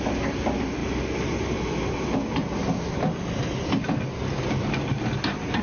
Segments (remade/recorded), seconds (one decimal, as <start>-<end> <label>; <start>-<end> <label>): 0.0-5.6 recorded